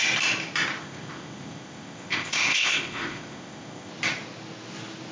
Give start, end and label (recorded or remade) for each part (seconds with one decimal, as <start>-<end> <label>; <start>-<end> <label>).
0.0-0.8 recorded; 0.8-3.9 remade; 3.9-5.1 recorded